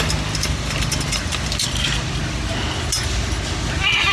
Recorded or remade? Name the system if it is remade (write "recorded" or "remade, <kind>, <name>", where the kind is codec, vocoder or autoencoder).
recorded